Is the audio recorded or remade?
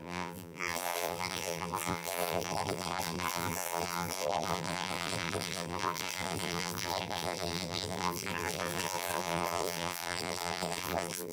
remade